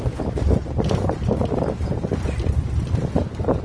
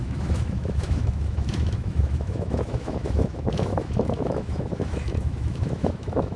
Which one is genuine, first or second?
first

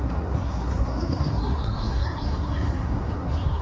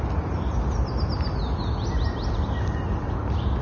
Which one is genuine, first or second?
second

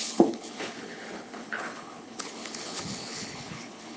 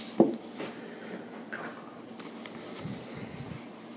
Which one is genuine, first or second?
second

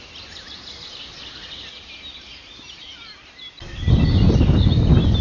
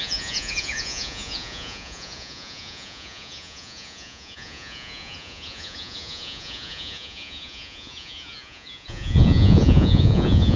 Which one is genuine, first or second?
first